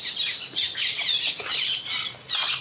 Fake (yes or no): no